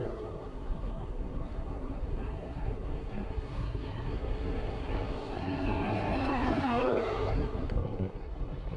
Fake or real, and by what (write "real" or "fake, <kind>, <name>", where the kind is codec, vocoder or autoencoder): fake, codec, SNAC